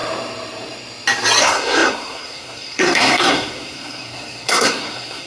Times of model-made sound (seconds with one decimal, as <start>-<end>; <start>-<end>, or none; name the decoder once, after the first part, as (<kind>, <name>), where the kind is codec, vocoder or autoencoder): 1.4-5.3 (codec, SNAC)